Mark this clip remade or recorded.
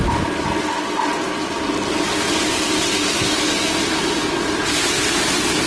recorded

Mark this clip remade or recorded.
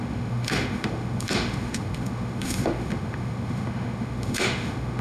remade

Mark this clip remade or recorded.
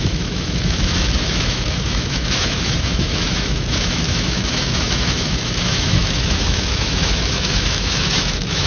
remade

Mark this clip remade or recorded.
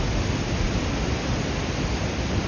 recorded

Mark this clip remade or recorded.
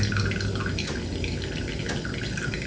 recorded